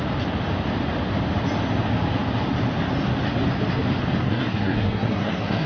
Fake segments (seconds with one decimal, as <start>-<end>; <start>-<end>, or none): 4.2-5.7

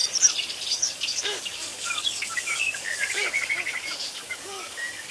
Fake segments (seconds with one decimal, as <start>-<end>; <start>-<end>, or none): 0.7-5.1